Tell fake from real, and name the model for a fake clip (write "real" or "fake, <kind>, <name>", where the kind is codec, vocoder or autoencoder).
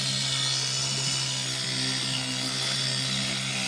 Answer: real